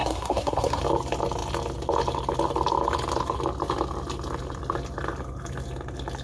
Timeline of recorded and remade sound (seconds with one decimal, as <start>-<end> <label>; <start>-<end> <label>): 0.0-0.8 remade; 0.8-6.2 recorded